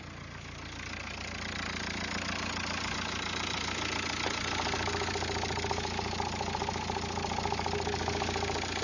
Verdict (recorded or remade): recorded